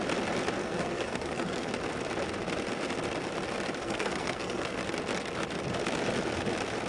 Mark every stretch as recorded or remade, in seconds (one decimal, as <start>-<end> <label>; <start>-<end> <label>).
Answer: 0.0-0.6 recorded; 0.6-1.7 remade; 1.7-3.8 recorded; 3.8-4.8 remade; 4.8-6.9 recorded